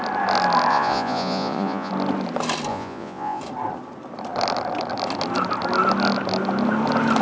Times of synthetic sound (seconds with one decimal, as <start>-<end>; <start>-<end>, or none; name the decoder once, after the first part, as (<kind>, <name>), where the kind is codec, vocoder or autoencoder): 0.7-1.9 (vocoder, Vocos); 2.7-3.4